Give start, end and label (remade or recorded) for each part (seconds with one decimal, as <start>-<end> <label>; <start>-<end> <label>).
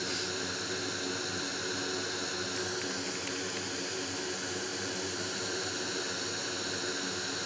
0.0-4.7 recorded; 4.7-6.0 remade; 6.0-7.5 recorded